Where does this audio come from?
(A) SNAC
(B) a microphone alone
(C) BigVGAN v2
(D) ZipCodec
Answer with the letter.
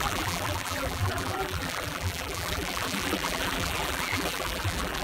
C